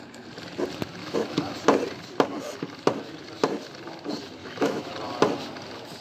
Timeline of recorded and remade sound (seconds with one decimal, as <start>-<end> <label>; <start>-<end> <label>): 0.0-1.0 recorded; 1.0-1.5 remade; 1.5-4.4 recorded; 4.4-4.9 remade; 4.9-6.0 recorded